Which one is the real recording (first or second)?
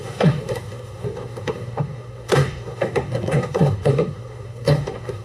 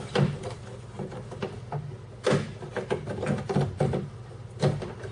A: second